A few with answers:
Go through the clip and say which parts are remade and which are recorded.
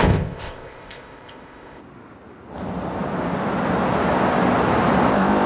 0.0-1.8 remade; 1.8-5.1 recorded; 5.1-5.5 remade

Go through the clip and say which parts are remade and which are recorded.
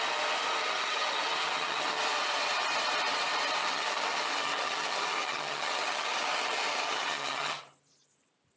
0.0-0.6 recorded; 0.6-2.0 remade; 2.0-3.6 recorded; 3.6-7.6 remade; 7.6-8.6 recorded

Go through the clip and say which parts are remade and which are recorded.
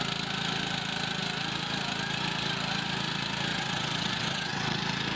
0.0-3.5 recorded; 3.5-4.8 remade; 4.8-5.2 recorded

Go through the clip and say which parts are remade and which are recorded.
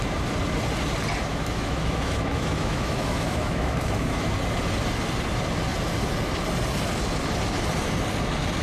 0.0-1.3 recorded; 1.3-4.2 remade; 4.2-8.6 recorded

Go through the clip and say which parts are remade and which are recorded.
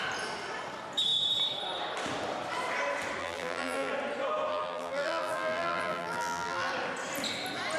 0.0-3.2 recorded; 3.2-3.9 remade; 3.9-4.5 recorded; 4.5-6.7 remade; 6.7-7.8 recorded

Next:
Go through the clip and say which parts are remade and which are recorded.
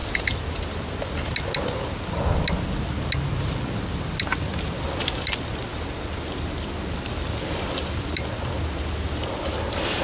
0.0-10.0 recorded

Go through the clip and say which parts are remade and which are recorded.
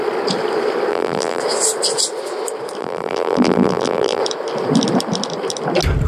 0.0-0.9 recorded; 0.9-1.4 remade; 1.4-2.8 recorded; 2.8-4.2 remade; 4.2-6.1 recorded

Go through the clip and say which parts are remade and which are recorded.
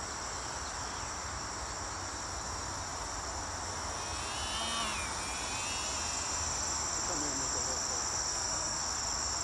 0.0-8.3 recorded; 8.3-8.8 remade; 8.8-9.4 recorded